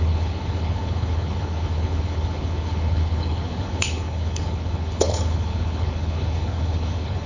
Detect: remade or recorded remade